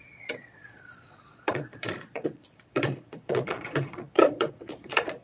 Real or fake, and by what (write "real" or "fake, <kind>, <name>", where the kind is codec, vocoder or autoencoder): fake, vocoder, Vocos